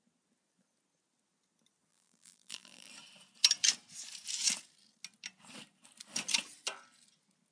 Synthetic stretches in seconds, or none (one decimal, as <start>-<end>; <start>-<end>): 1.9-2.9